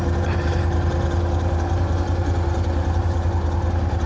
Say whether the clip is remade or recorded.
recorded